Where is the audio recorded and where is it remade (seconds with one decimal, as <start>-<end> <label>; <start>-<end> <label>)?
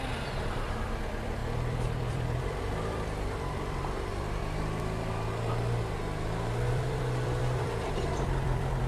0.0-4.4 remade; 4.4-6.7 recorded; 6.7-8.9 remade